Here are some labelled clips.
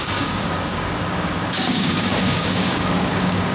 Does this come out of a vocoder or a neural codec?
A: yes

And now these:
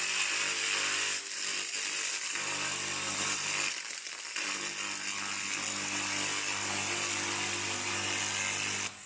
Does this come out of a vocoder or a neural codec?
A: no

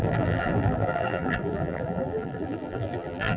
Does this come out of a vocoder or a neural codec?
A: yes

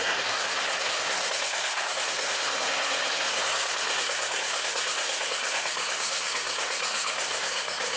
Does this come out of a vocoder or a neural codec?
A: yes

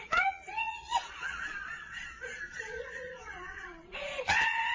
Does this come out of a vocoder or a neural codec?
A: yes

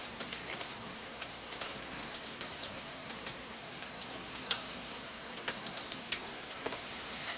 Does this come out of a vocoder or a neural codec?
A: yes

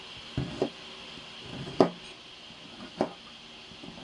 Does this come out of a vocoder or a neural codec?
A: no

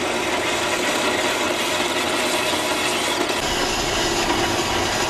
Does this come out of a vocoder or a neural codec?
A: no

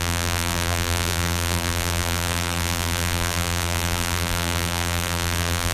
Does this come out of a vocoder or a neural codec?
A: yes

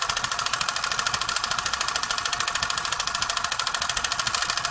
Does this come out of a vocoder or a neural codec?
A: no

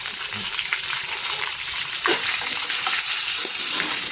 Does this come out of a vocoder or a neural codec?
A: yes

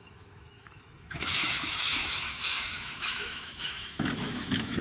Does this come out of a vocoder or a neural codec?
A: yes